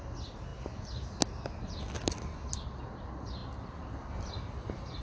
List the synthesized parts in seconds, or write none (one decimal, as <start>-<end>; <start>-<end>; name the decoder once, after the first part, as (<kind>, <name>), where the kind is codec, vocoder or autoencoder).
none